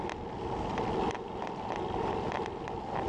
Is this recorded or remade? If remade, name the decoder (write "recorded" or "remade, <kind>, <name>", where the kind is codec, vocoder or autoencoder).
recorded